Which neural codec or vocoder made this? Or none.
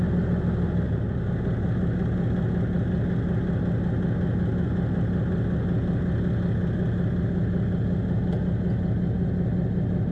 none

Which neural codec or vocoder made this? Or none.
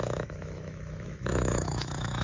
autoencoder, DAC-VAE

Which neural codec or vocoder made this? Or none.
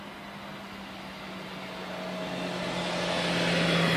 none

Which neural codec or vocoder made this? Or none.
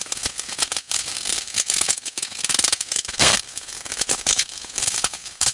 codec, SNAC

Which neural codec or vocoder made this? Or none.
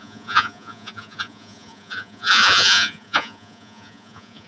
vocoder, Vocos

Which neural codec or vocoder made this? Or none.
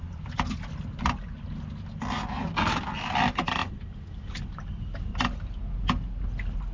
none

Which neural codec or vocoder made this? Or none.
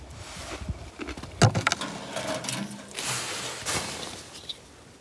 none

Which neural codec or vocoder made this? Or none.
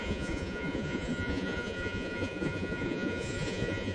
vocoder, Vocos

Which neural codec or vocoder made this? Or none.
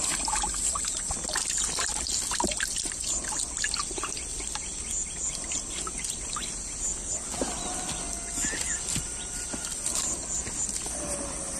none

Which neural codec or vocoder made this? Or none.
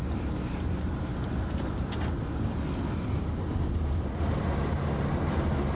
none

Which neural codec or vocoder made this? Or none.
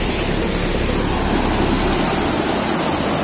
none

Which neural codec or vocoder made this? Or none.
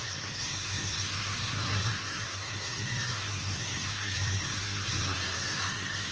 codec, SNAC